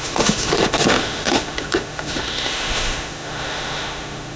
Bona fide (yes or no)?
no